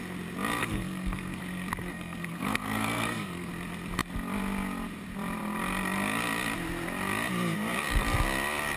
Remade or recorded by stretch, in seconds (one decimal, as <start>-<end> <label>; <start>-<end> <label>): 0.0-0.6 recorded; 0.6-1.4 remade; 1.4-1.9 recorded; 1.9-3.5 remade; 3.5-8.8 recorded

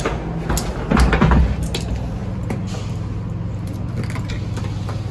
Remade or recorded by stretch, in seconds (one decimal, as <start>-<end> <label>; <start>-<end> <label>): 0.0-5.1 recorded

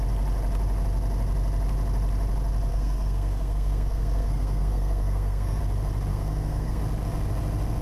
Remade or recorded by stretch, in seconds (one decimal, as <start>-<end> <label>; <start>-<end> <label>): 0.0-2.7 recorded; 2.7-5.6 remade; 5.6-6.1 recorded; 6.1-6.8 remade; 6.8-7.8 recorded

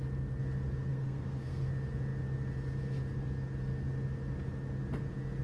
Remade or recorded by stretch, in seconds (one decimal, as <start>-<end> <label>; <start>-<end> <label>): 0.0-0.9 recorded; 0.9-1.7 remade; 1.7-5.4 recorded

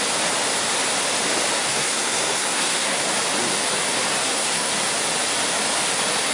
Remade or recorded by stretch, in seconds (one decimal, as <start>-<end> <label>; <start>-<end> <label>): 0.0-1.7 recorded; 1.7-3.0 remade; 3.0-4.1 recorded; 4.1-4.7 remade; 4.7-6.3 recorded